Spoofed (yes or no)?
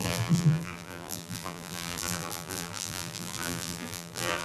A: yes